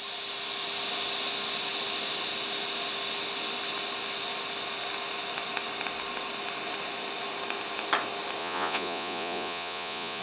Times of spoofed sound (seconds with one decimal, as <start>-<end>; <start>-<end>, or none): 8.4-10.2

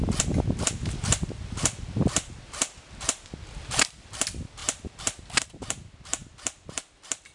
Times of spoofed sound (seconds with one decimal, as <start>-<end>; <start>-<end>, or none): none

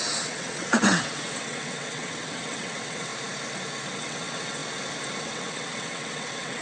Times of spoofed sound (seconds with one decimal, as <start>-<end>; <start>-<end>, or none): 0.0-3.1; 4.0-4.6; 5.2-6.6